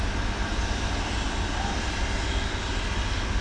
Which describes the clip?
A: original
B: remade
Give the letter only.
A